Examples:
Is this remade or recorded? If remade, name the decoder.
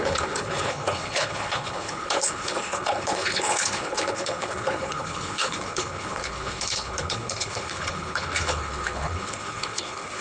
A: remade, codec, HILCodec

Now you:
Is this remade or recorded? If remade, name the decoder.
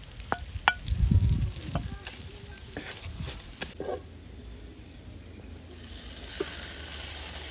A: recorded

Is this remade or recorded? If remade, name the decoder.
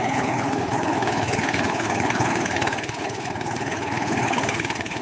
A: remade, codec, HILCodec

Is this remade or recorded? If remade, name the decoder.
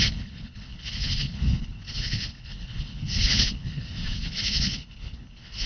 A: remade, codec, HILCodec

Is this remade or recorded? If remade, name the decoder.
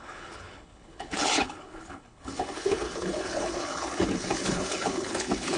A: remade, codec, HILCodec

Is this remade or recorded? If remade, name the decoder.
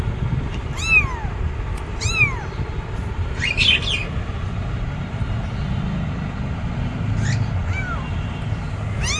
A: recorded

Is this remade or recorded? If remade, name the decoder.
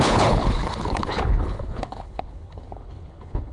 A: remade, codec, HILCodec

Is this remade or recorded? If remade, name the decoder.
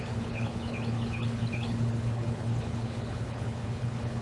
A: remade, codec, HILCodec